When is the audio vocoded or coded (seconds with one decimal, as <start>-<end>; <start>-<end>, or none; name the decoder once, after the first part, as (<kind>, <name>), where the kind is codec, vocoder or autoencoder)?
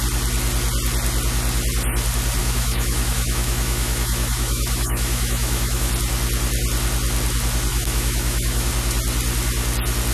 2.4-5.9 (autoencoder, DAC-VAE); 7.7-8.7